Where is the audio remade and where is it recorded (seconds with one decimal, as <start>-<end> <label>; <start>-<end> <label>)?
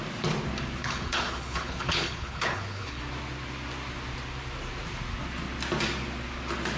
0.0-0.8 recorded; 0.8-3.0 remade; 3.0-6.8 recorded